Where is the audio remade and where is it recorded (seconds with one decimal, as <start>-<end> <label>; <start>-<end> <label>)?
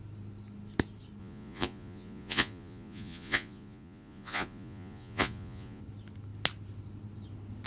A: 0.0-1.2 recorded; 1.2-5.8 remade; 5.8-7.7 recorded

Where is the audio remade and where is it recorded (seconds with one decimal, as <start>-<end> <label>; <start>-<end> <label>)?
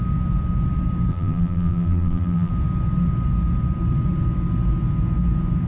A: 0.0-1.1 recorded; 1.1-2.5 remade; 2.5-5.7 recorded